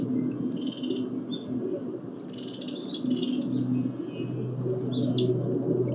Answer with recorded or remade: recorded